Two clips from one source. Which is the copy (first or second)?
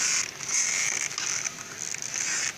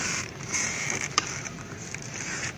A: second